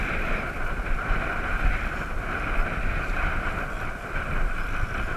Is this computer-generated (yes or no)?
yes